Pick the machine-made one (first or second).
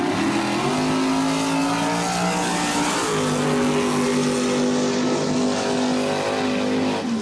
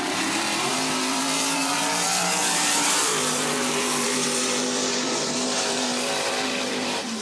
second